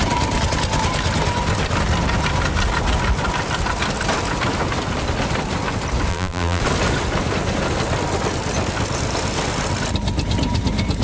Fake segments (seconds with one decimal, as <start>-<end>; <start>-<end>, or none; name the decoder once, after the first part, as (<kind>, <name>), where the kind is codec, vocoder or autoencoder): 6.1-6.6 (vocoder, BigVGAN v2)